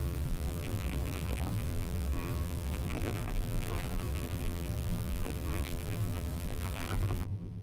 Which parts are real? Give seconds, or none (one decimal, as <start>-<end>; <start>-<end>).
none